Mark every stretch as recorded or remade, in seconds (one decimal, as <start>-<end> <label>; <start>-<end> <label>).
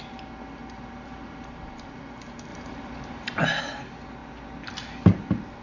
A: 0.0-0.6 recorded; 0.6-1.9 remade; 1.9-2.5 recorded; 2.5-3.4 remade; 3.4-5.6 recorded